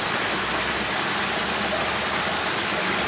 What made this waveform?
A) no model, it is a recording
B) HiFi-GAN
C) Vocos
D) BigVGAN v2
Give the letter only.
A